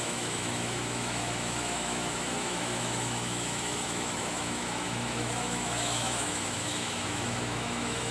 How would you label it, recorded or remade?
remade